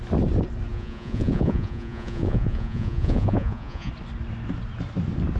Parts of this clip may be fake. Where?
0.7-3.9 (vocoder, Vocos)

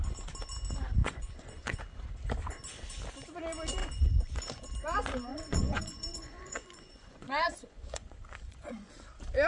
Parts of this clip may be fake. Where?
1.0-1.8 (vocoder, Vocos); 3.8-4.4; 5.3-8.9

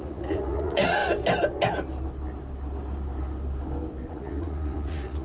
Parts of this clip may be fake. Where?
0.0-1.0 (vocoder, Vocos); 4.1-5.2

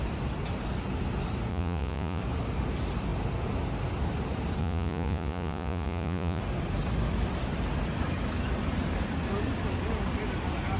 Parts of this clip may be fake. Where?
1.5-2.2 (vocoder, Vocos); 4.6-6.4

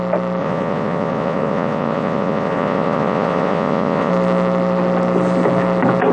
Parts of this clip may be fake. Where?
0.4-4.1 (vocoder, Vocos)

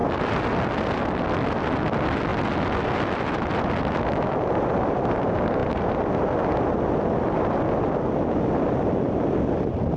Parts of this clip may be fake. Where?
none